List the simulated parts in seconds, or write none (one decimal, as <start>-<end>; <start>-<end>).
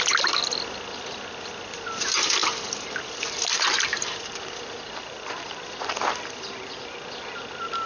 3.5-6.8